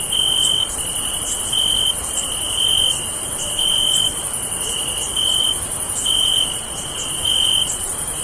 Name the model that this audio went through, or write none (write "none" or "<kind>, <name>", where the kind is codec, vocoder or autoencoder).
none